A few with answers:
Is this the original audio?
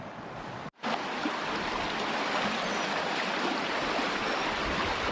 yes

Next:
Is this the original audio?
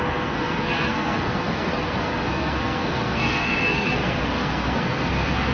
no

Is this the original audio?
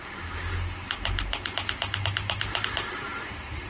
yes